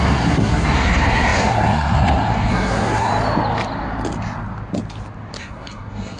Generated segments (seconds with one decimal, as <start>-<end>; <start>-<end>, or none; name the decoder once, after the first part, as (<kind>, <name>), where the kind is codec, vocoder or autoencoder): 0.0-3.1 (codec, SNAC); 5.4-6.2